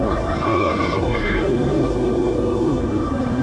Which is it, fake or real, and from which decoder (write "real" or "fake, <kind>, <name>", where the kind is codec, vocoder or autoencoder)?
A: fake, codec, SNAC